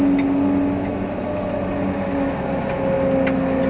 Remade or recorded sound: recorded